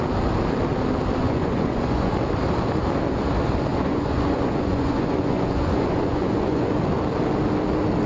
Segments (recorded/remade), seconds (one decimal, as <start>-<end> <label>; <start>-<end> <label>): 0.0-1.2 recorded; 1.2-2.1 remade; 2.1-3.7 recorded; 3.7-6.7 remade; 6.7-8.1 recorded